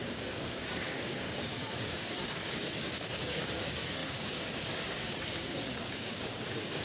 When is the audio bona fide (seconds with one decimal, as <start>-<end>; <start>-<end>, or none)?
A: none

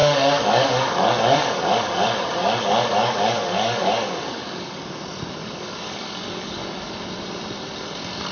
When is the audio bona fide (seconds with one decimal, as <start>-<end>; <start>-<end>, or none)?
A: 5.0-5.4; 6.6-8.3